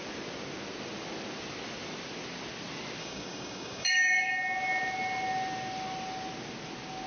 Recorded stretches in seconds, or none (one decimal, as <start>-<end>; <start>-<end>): 0.0-3.0; 4.3-7.1